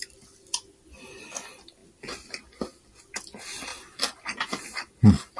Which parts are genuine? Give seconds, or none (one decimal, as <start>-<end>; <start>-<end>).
0.0-5.4